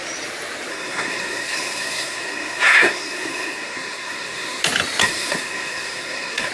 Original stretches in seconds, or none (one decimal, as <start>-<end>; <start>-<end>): 0.0-0.7; 4.6-5.0

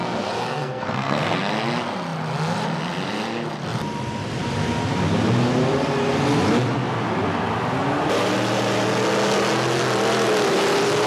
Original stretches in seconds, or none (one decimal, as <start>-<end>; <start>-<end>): 1.5-11.1